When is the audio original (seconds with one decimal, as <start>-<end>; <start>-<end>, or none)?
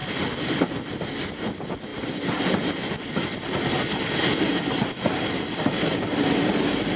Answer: 0.0-7.0